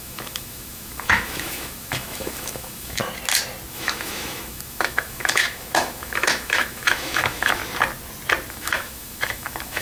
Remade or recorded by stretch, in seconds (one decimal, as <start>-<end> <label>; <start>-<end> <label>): 0.0-3.0 remade; 3.0-3.7 recorded; 3.7-7.6 remade; 7.6-8.5 recorded; 8.5-9.8 remade

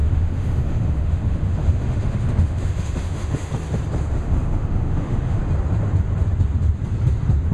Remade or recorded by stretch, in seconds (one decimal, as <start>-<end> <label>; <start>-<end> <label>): 0.0-3.5 remade; 3.5-4.1 recorded; 4.1-5.4 remade; 5.4-7.5 recorded